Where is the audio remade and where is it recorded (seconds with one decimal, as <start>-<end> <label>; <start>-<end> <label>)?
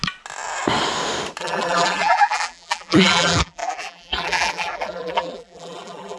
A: 0.0-1.4 recorded; 1.4-6.2 remade